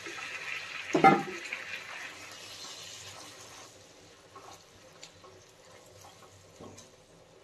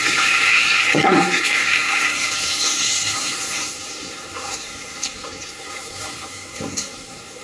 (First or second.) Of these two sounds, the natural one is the first